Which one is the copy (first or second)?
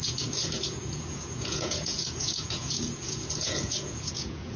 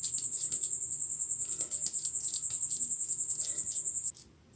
first